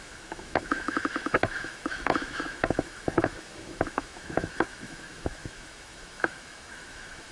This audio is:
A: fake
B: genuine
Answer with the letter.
A